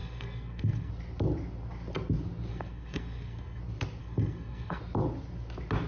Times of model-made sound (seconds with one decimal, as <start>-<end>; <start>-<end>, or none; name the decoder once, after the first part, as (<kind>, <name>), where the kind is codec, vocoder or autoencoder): 0.0-0.9 (codec, SNAC); 2.5-3.6; 4.0-4.8